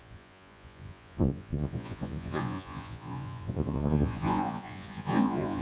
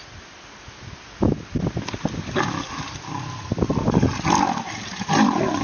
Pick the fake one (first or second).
first